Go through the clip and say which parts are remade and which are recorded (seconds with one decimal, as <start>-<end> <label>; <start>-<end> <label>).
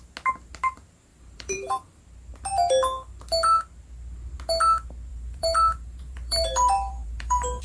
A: 0.0-1.1 recorded; 1.1-2.0 remade; 2.0-5.1 recorded; 5.1-7.6 remade